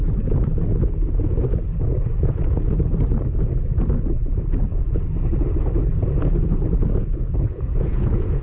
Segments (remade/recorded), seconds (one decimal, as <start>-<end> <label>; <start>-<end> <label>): 0.0-7.0 recorded; 7.0-8.4 remade